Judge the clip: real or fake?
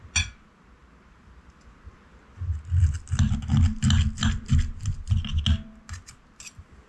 real